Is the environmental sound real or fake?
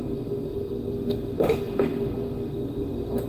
fake